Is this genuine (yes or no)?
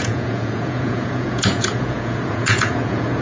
no